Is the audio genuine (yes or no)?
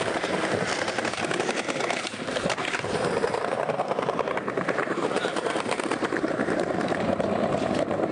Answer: no